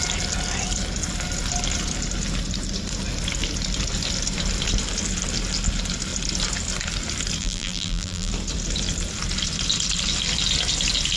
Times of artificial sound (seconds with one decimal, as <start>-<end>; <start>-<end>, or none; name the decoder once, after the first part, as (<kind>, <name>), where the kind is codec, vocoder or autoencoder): 7.4-8.3 (vocoder, BigVGAN v2)